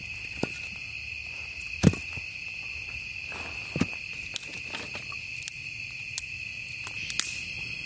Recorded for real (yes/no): yes